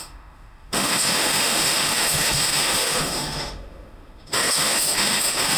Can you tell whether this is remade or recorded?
remade